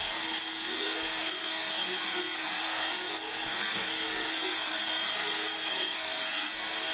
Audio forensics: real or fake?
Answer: fake